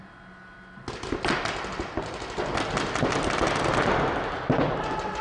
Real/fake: real